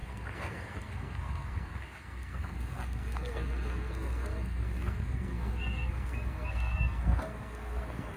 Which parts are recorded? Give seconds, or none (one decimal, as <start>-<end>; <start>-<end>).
none